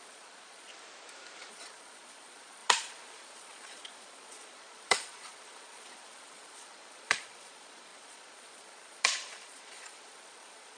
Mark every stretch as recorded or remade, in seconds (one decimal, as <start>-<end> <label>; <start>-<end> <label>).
0.0-0.7 remade; 0.7-1.5 recorded; 1.5-10.8 remade